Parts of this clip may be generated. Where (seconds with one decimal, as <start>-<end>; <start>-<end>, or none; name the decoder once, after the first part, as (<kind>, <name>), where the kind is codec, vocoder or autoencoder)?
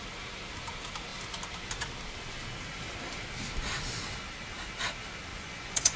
5.3-6.0 (vocoder, Vocos)